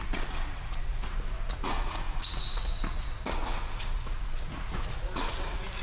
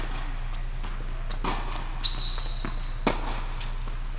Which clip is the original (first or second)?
second